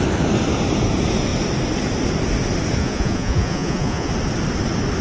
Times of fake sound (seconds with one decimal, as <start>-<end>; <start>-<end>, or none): 2.8-4.1